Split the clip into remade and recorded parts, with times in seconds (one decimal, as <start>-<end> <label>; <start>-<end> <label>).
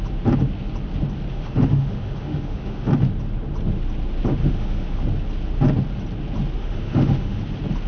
0.0-1.3 recorded; 1.3-2.9 remade; 2.9-4.4 recorded; 4.4-5.0 remade; 5.0-6.6 recorded; 6.6-7.4 remade; 7.4-7.9 recorded